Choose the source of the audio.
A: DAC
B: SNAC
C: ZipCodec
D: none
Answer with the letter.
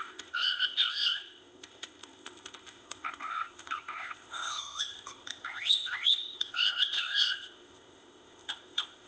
C